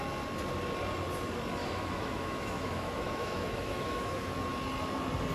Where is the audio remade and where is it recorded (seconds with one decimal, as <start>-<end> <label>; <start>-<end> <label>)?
0.0-1.6 recorded; 1.6-4.2 remade; 4.2-5.3 recorded